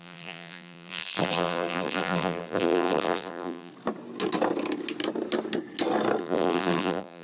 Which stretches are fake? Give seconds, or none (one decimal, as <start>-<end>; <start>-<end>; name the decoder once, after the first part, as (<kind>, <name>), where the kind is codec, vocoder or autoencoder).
0.0-3.7 (vocoder, BigVGAN v2); 6.2-7.2